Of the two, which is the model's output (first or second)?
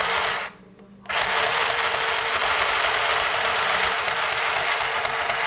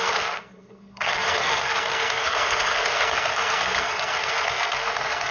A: second